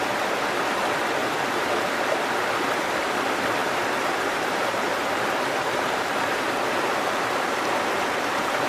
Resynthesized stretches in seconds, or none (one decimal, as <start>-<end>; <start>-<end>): 1.2-1.7; 3.6-8.7